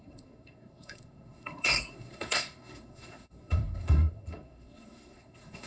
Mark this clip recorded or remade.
remade